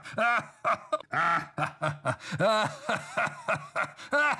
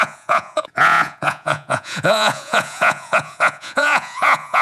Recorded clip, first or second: first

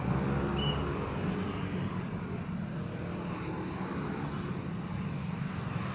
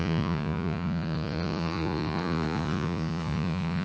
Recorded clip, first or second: first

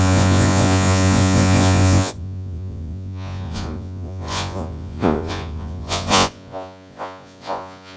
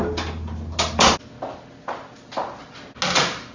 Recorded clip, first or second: second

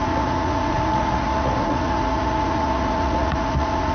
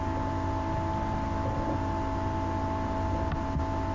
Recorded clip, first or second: second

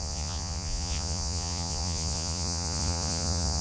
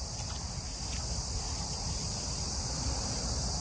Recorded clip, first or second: second